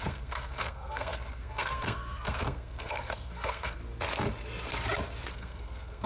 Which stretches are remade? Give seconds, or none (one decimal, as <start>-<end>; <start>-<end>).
0.0-3.8; 5.3-6.1